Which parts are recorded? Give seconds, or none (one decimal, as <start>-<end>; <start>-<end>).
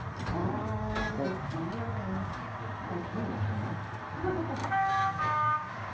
0.0-0.4; 1.1-1.9; 2.6-4.6